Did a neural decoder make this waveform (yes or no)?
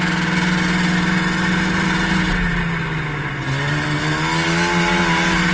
no